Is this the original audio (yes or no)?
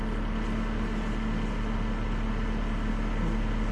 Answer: yes